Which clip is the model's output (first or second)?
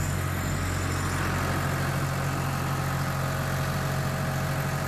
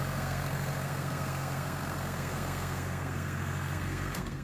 second